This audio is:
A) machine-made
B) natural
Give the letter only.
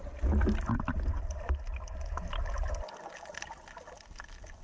B